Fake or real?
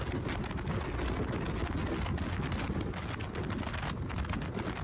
real